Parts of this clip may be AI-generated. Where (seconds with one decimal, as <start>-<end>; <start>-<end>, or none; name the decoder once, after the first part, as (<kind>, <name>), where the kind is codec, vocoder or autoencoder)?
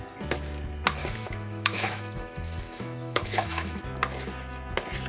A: 1.0-3.8 (autoencoder, DAC-VAE)